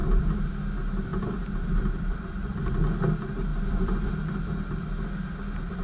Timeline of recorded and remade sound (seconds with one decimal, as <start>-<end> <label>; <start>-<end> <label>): 0.0-0.5 remade; 0.5-1.1 recorded; 1.1-2.7 remade; 2.7-3.5 recorded; 3.5-4.1 remade; 4.1-5.8 recorded